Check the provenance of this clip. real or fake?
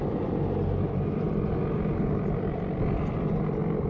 real